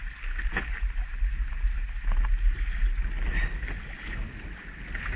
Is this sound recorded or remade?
recorded